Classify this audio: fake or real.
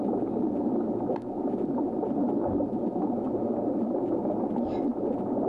real